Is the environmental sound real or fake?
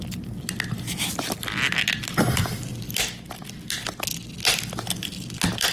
real